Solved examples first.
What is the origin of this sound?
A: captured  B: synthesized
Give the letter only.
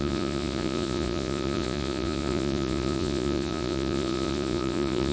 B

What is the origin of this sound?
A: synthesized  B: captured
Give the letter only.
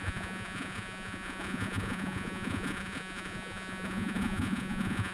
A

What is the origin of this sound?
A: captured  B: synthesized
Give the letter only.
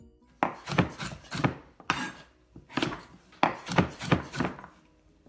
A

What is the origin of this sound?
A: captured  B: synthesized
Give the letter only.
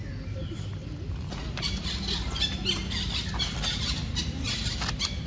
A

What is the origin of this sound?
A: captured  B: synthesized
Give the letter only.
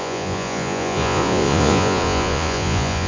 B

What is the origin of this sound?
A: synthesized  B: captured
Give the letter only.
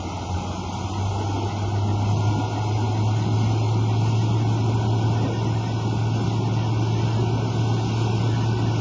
B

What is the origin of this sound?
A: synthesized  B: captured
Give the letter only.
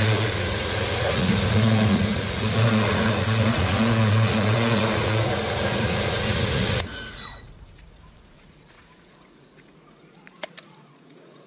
A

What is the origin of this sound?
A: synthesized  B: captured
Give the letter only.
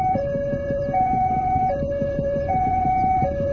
A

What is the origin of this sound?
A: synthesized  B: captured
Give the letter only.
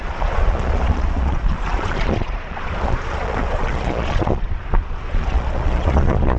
A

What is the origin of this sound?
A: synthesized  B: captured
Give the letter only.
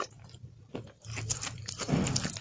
B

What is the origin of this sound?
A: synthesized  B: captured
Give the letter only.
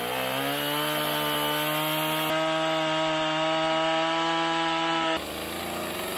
B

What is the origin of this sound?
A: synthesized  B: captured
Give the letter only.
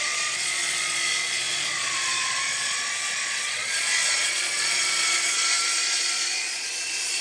A